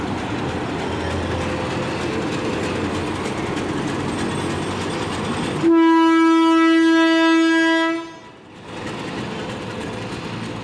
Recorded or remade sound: recorded